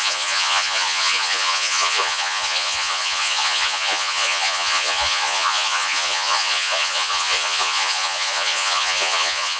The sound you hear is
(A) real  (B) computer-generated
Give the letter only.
B